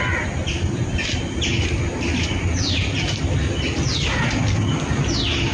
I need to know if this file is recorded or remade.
recorded